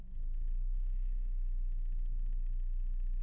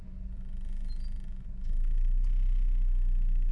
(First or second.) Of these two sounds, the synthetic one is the first